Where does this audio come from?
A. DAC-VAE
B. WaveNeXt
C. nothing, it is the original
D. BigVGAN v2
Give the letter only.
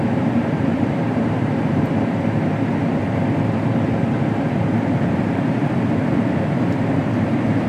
D